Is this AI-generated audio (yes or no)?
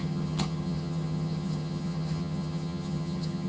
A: yes